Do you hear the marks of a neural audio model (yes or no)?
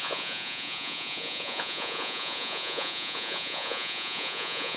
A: yes